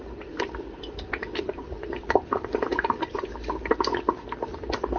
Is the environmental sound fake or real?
real